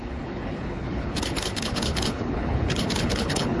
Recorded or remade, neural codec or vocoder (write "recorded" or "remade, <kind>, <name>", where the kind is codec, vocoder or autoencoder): remade, codec, HILCodec